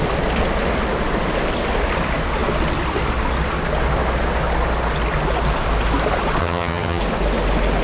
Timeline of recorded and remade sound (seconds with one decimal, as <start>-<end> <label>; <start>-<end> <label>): 0.0-6.4 recorded; 6.4-7.0 remade; 7.0-7.8 recorded